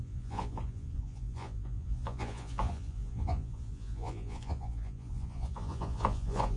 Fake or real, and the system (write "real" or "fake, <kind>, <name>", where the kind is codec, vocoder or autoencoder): fake, vocoder, Vocos